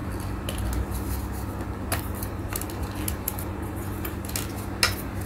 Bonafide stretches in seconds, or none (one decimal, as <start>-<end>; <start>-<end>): 0.8-5.3